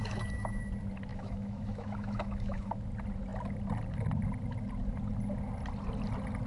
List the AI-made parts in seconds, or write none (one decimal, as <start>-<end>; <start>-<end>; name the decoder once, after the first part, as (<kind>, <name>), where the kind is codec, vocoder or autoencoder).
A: 0.0-0.7 (autoencoder, DAC-VAE); 1.1-2.7